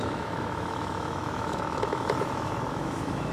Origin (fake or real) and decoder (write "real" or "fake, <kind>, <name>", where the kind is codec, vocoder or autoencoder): fake, autoencoder, DAC-VAE